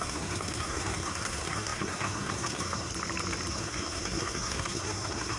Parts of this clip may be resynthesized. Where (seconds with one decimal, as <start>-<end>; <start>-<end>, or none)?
0.0-2.9; 3.5-5.4